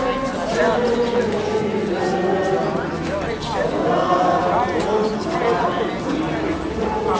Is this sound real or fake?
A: real